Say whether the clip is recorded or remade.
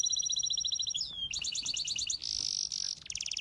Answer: recorded